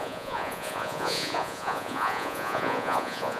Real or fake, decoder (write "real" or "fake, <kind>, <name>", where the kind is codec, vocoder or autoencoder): fake, vocoder, Vocos